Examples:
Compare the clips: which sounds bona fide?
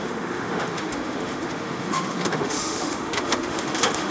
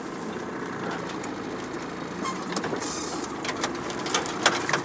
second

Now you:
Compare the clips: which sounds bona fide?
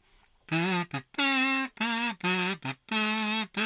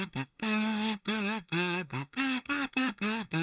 first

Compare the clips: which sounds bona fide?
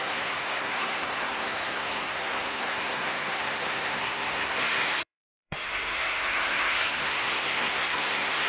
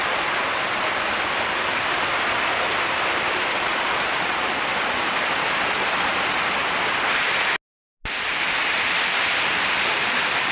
second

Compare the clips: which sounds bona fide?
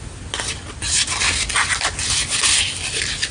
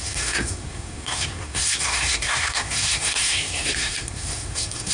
first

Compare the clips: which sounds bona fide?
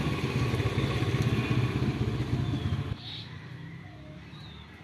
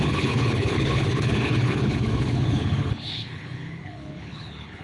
first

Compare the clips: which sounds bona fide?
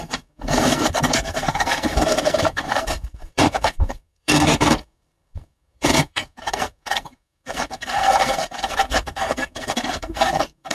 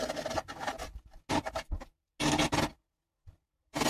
second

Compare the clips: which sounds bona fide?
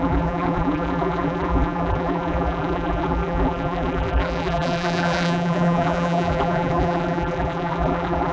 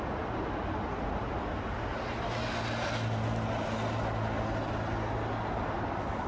second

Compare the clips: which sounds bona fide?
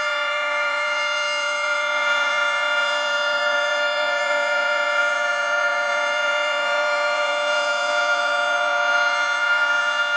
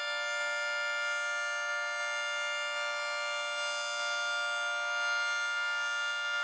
second